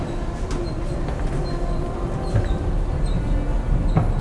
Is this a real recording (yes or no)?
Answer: yes